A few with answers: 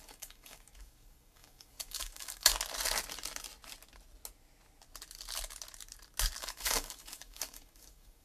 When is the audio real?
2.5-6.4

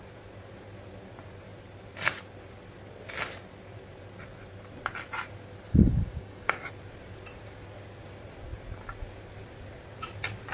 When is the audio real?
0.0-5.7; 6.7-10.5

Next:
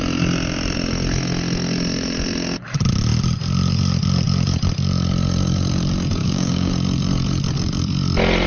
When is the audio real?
0.0-6.2; 6.7-8.5

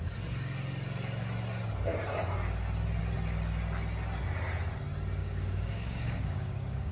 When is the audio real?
0.0-5.2

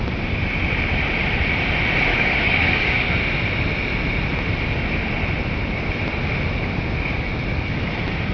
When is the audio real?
0.0-2.1; 3.1-8.3

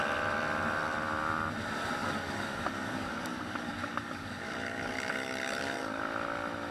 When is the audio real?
0.0-2.0; 6.0-6.7